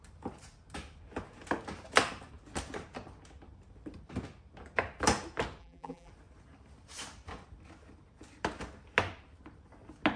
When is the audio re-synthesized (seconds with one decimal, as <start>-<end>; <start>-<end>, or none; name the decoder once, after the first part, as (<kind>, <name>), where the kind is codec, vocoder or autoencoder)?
5.6-6.1 (vocoder, BigVGAN v2)